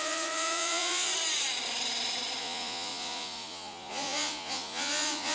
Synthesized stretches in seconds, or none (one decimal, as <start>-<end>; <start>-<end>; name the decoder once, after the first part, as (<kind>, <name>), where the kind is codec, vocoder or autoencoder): 0.0-1.1 (vocoder, Vocos); 2.4-5.3